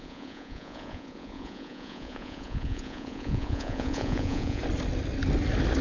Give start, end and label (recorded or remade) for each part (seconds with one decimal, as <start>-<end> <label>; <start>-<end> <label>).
0.0-4.6 remade; 4.6-5.8 recorded